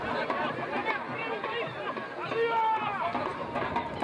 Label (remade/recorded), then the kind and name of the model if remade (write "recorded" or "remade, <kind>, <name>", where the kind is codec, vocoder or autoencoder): recorded